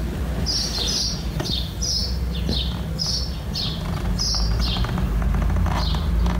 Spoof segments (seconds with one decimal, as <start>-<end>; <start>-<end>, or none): none